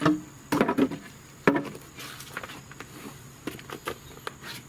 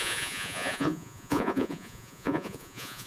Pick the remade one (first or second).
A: second